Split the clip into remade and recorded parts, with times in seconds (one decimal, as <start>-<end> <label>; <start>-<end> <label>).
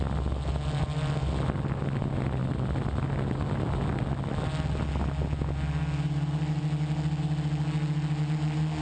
0.0-8.8 recorded